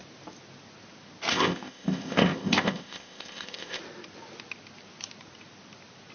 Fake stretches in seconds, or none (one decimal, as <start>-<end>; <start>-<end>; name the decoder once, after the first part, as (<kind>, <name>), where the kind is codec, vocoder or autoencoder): 1.3-3.8 (codec, ZipCodec)